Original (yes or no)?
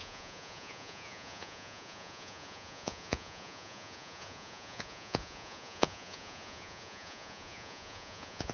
no